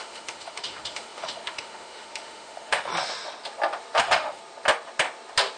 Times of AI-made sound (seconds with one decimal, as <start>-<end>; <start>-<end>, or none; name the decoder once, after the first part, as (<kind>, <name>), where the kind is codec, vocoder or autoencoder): 0.0-2.9 (autoencoder, DAC-VAE); 4.0-4.4